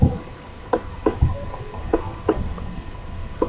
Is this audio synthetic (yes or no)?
yes